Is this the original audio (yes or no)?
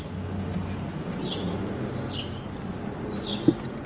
yes